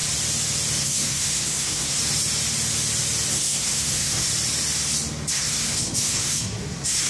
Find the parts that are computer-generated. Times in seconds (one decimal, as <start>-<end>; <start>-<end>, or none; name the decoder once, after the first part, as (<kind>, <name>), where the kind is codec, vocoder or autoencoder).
0.8-2.0 (codec, SNAC); 3.3-4.3; 5.3-7.1